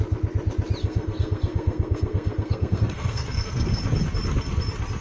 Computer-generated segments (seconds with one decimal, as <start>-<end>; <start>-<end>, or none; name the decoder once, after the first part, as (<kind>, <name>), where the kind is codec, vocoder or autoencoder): 0.8-3.8 (codec, SNAC)